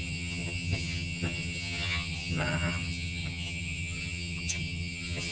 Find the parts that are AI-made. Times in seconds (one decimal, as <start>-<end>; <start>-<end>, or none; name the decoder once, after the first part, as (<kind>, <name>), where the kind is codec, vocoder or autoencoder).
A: 0.0-5.3 (vocoder, HiFi-GAN)